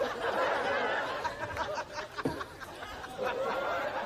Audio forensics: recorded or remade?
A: recorded